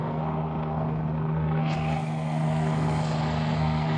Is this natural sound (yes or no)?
no